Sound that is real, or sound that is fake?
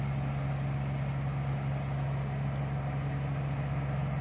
real